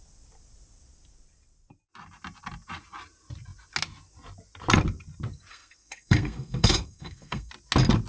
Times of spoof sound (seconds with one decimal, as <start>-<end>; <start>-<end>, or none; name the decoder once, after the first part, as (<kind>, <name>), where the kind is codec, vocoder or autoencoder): 5.5-7.5 (codec, SNAC)